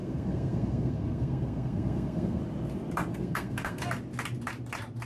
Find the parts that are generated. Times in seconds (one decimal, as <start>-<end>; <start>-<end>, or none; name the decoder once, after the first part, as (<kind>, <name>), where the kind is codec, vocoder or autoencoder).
0.0-2.4 (codec, SNAC); 3.1-3.9